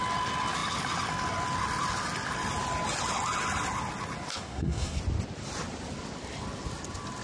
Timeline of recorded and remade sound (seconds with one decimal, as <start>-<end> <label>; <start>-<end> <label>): 0.0-4.3 recorded; 4.3-5.0 remade; 5.0-7.2 recorded

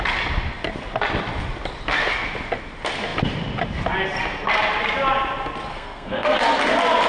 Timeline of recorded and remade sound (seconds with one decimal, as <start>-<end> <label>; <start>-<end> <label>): 0.0-5.7 recorded; 5.7-6.4 remade; 6.4-7.1 recorded

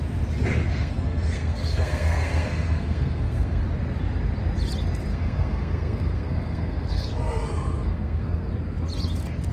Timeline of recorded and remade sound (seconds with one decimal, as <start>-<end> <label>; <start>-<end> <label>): 0.0-0.7 recorded; 0.7-3.6 remade; 3.6-5.1 recorded; 5.1-8.5 remade; 8.5-9.5 recorded